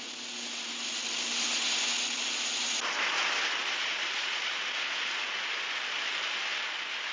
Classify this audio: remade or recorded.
recorded